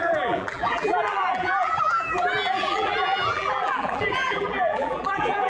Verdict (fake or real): fake